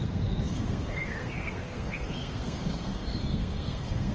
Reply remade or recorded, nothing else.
remade